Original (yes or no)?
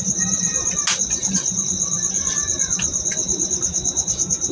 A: yes